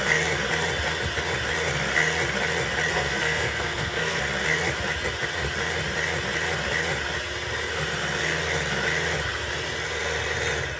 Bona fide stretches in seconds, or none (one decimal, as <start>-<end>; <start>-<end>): 0.0-2.9; 4.2-10.8